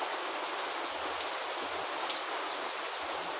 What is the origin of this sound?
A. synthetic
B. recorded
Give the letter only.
B